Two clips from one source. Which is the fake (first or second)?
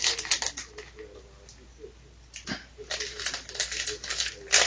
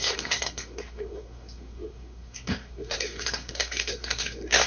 second